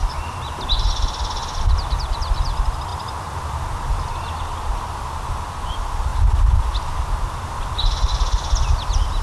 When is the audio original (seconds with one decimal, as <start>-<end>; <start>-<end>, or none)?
0.0-9.2